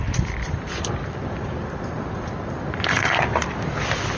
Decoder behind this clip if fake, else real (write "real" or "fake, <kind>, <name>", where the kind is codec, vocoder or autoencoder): fake, vocoder, BigVGAN v2